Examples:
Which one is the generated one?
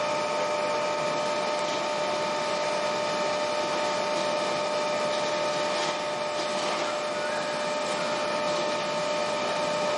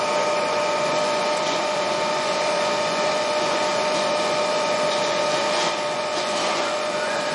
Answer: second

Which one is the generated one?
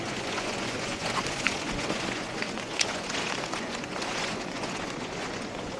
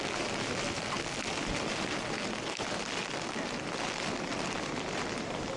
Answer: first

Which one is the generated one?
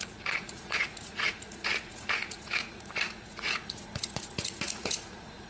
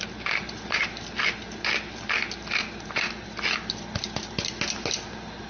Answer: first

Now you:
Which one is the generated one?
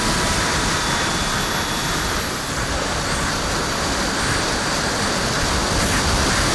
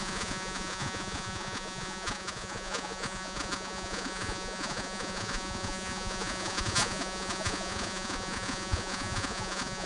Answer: second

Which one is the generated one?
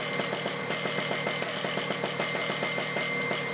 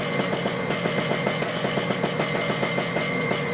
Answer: second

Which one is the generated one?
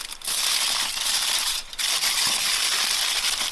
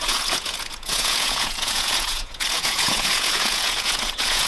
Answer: second